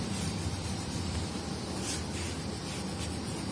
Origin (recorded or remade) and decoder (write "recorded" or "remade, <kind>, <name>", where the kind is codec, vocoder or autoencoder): remade, vocoder, BigVGAN v2